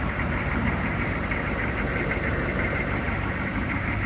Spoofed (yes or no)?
yes